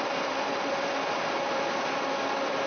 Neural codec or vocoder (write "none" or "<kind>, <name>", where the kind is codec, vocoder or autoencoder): vocoder, BigVGAN v2